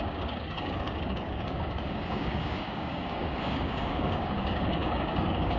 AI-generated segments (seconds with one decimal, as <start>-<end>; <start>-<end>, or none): 0.0-5.6